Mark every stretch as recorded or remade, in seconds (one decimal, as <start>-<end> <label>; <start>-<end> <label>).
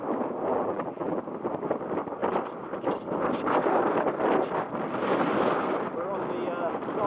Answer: 0.0-0.5 recorded; 0.5-1.2 remade; 1.2-7.1 recorded